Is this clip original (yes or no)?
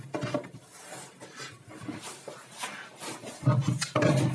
yes